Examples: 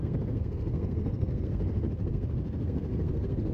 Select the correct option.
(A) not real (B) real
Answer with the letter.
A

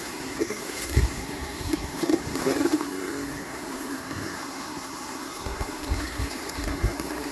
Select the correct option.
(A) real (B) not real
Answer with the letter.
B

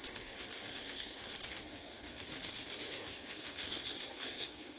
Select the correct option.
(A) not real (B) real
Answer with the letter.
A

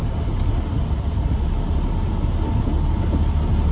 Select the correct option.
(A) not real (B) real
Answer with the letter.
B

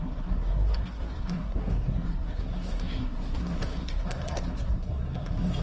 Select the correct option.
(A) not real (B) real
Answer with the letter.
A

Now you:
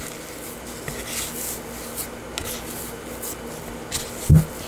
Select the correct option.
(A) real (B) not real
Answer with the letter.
A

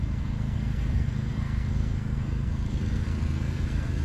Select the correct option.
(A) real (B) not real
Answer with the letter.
B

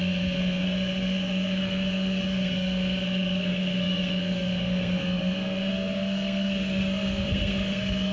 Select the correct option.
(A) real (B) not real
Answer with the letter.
B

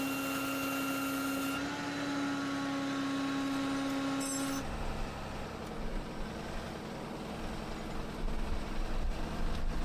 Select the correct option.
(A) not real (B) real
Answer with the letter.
B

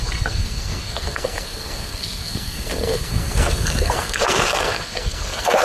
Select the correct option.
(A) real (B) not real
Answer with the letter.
B